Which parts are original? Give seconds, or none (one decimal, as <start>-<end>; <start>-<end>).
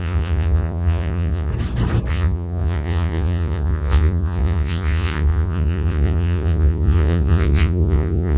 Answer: 1.5-2.1